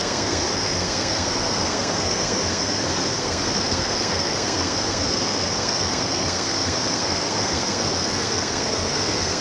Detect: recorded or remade remade